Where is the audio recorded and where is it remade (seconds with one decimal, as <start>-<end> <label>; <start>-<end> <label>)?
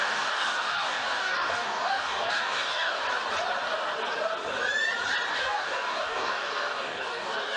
0.0-3.0 remade; 3.0-5.3 recorded; 5.3-7.6 remade